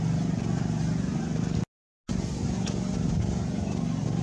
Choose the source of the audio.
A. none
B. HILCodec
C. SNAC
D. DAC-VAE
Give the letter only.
A